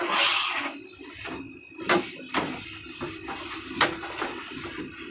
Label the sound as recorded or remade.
recorded